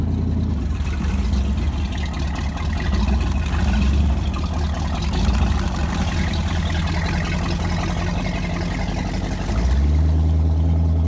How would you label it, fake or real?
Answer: real